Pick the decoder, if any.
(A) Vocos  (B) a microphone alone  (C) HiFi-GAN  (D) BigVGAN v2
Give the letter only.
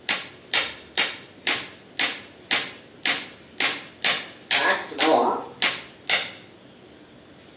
B